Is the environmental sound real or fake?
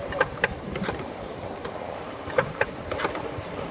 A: fake